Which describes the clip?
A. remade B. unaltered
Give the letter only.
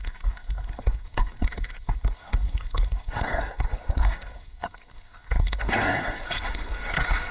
A